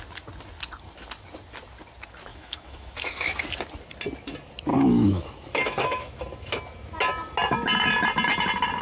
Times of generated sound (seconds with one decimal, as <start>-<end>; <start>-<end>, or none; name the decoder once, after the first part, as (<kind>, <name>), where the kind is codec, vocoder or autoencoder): 2.3-3.4 (autoencoder, DAC-VAE); 4.7-6.2